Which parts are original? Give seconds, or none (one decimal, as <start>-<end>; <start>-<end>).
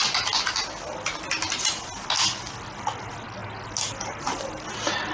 0.0-5.1